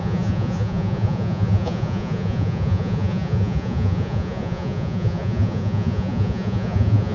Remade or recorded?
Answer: remade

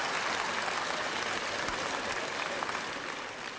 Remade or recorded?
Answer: recorded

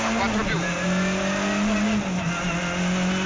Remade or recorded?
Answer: recorded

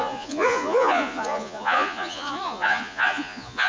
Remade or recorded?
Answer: remade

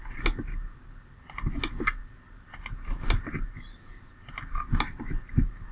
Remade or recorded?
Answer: recorded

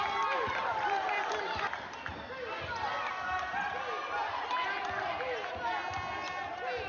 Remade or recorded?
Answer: recorded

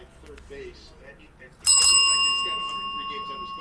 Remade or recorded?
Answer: recorded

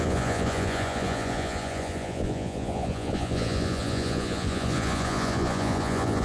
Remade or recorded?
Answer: remade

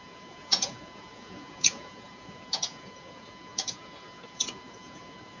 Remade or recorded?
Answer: remade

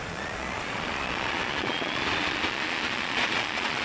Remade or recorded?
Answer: remade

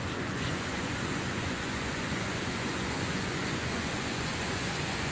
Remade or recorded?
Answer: remade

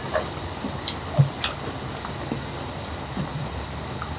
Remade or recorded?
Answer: recorded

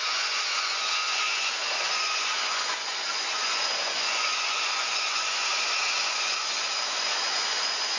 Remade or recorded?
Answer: remade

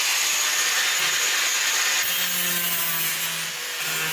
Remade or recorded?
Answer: recorded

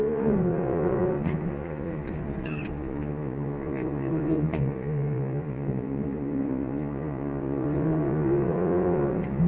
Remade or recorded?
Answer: remade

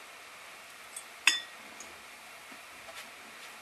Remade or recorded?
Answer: recorded